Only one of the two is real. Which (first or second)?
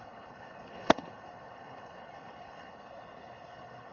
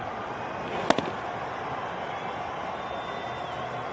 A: second